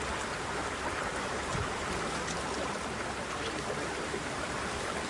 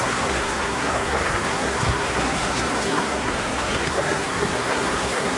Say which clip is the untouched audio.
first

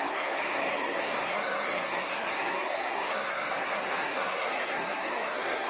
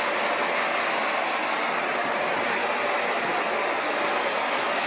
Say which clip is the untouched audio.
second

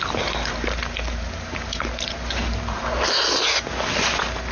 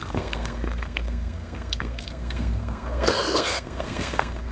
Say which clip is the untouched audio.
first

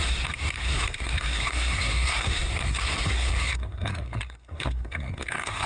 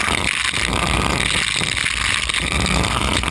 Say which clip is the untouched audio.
second